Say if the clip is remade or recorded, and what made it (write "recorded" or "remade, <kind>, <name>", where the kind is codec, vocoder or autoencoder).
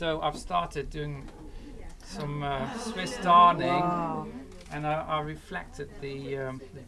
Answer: recorded